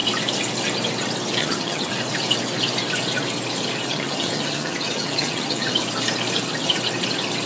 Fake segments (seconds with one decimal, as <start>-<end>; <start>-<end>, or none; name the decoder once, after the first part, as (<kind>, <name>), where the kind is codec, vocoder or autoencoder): 1.4-1.9 (vocoder, HiFi-GAN); 3.9-5.7